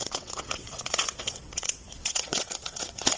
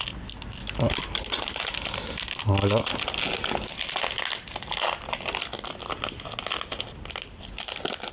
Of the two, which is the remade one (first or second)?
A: first